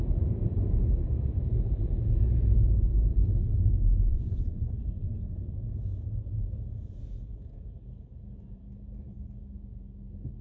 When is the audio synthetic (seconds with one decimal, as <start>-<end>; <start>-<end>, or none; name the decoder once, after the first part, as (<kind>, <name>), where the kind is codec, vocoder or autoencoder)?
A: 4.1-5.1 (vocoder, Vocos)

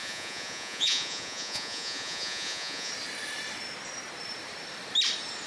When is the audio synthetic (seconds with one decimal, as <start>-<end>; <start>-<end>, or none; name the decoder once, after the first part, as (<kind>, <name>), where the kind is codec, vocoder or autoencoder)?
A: 0.0-2.9 (vocoder, Vocos)

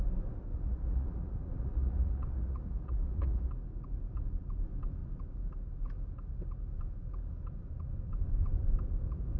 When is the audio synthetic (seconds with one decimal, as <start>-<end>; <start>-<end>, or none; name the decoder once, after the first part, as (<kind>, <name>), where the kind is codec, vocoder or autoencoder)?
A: 0.5-3.5 (vocoder, Vocos)

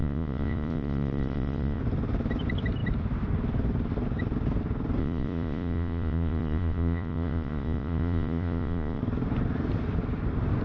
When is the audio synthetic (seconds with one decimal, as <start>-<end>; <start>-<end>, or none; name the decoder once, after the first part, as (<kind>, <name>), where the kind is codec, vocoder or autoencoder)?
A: 0.0-1.8 (vocoder, Vocos); 5.0-9.0